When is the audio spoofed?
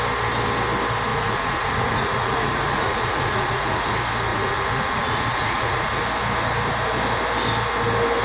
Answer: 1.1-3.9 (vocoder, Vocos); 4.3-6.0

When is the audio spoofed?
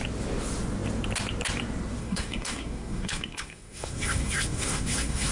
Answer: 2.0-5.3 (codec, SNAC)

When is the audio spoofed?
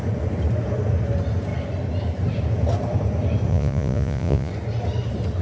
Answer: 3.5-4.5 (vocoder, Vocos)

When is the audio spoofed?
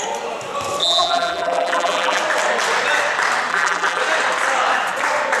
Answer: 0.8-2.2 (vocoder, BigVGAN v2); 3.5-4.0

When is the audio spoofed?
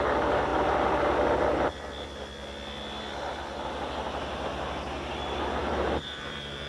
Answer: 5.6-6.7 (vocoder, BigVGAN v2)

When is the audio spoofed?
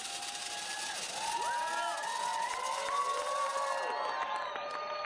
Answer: none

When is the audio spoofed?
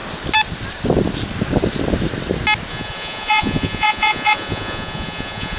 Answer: 2.7-5.6 (vocoder, Vocos)